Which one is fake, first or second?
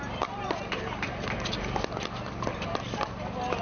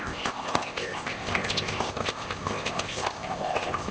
second